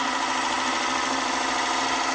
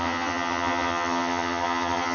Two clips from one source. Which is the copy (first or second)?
second